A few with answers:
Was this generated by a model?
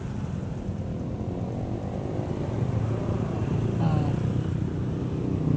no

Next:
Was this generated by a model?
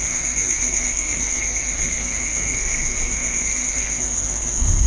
yes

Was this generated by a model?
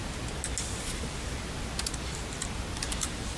no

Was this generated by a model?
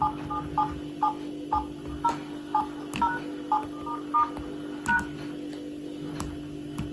no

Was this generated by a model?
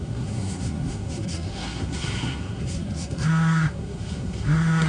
yes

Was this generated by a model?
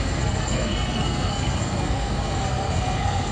yes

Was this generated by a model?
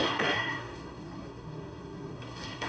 yes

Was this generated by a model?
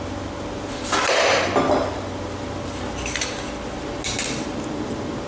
no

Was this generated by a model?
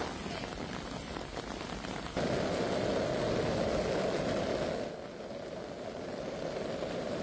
no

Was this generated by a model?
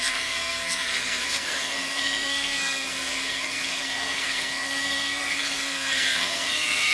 yes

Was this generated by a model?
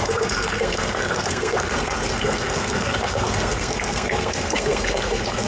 yes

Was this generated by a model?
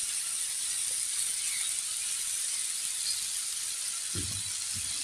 no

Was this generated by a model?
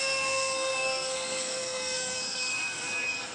yes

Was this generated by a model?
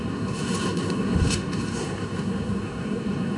yes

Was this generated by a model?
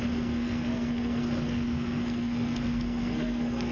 yes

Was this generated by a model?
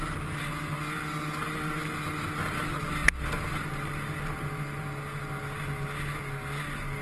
no